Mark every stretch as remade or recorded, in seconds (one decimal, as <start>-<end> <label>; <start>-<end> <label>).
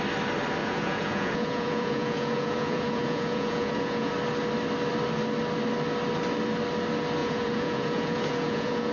0.0-0.6 recorded; 0.6-4.1 remade; 4.1-7.2 recorded; 7.2-8.9 remade